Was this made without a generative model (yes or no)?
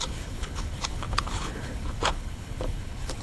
no